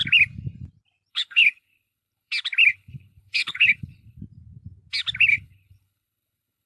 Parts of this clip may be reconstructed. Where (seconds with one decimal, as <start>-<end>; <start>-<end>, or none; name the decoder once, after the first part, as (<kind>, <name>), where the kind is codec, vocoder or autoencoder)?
1.1-2.3 (codec, HILCodec); 2.7-4.2; 5.3-6.7